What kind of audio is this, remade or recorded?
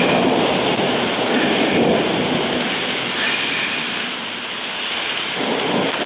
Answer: recorded